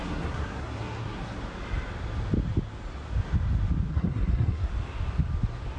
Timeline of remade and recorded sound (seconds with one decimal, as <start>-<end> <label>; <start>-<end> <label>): 0.0-1.4 remade; 1.4-3.9 recorded; 3.9-4.7 remade; 4.7-5.8 recorded